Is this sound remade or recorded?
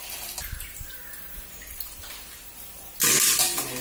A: recorded